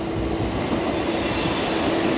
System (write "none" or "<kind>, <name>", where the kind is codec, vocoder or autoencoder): none